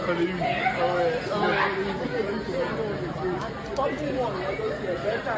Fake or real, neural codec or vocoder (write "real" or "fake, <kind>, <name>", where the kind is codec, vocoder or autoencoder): real